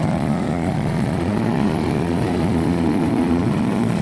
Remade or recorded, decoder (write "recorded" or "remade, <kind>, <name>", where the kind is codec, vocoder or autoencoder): remade, vocoder, Vocos